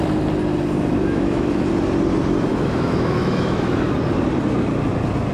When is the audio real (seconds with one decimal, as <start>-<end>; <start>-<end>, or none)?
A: 0.0-1.0; 1.7-2.5; 3.9-5.3